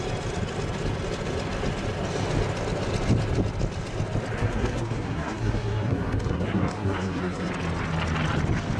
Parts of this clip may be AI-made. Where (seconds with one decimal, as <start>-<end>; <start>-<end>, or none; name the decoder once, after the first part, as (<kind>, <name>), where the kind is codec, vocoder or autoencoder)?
4.4-7.5 (codec, SNAC)